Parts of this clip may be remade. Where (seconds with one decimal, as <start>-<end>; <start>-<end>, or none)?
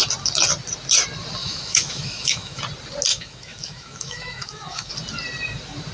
1.4-2.6; 3.1-4.9